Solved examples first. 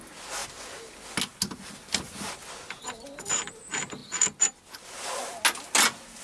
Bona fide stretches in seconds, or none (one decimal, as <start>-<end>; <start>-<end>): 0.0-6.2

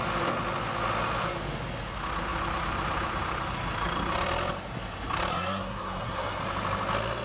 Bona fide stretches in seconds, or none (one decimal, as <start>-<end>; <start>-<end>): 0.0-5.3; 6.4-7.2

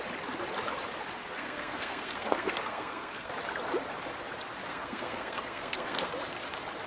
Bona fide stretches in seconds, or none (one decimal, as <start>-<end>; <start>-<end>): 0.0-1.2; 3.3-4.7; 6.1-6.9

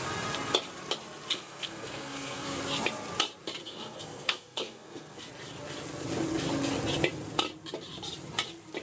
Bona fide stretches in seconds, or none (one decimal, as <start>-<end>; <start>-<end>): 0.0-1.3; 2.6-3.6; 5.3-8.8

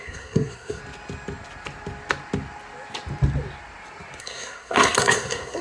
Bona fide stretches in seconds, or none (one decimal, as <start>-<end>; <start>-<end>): 0.8-4.2